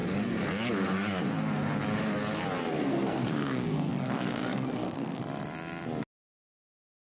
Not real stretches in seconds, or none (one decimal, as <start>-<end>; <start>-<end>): 2.8-5.2; 6.6-7.1